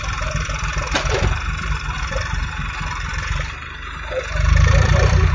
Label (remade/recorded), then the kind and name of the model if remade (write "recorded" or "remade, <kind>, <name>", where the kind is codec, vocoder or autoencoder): remade, vocoder, BigVGAN v2